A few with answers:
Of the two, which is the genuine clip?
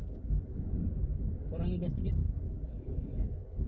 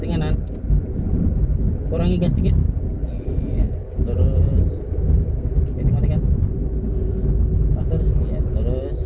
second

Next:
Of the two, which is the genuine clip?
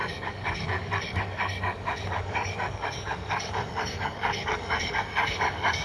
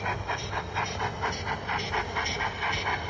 second